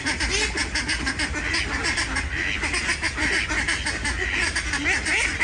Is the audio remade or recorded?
recorded